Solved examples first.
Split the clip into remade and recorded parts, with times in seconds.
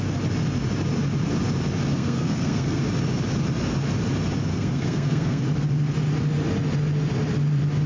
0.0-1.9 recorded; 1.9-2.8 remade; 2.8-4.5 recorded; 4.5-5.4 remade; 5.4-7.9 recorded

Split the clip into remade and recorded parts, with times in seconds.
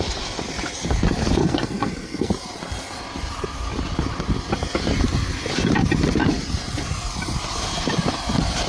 0.0-1.4 recorded; 1.4-2.3 remade; 2.3-8.7 recorded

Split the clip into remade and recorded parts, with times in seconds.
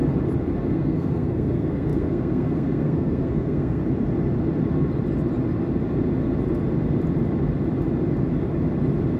0.0-0.7 recorded; 0.7-3.8 remade; 3.8-9.2 recorded